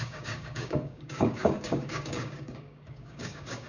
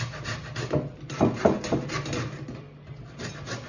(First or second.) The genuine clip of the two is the second